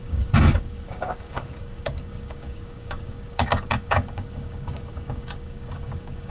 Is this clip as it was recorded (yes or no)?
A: no